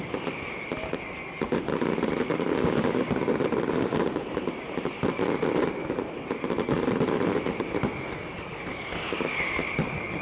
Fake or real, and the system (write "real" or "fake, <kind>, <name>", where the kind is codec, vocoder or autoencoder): real